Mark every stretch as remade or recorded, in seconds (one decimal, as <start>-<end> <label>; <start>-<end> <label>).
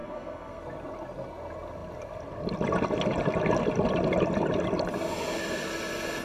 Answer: 0.0-0.6 remade; 0.6-6.2 recorded